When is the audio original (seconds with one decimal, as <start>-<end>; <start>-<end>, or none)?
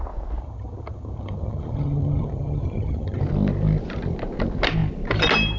0.0-0.4; 3.2-5.6